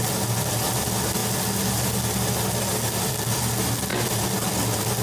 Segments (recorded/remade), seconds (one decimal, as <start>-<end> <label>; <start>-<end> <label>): 0.0-5.0 recorded